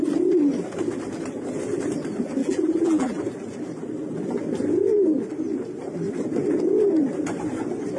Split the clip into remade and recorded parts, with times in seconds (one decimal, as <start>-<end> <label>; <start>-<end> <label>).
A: 0.0-2.4 recorded; 2.4-3.2 remade; 3.2-8.0 recorded